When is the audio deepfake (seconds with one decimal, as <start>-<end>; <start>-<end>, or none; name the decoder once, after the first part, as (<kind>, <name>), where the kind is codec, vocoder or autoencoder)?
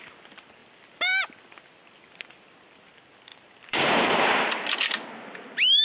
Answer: 3.3-4.5 (vocoder, BigVGAN v2)